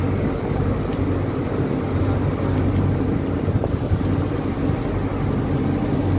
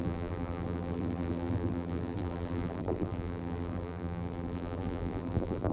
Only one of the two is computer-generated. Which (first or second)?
second